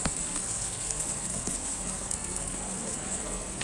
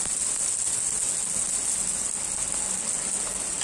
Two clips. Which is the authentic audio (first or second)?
second